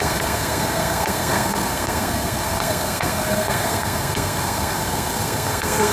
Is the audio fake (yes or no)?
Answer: yes